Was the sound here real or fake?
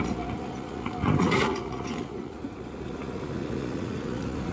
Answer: fake